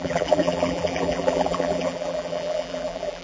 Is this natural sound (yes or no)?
no